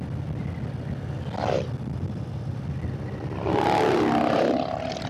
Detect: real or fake real